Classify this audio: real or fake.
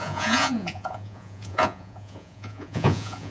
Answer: fake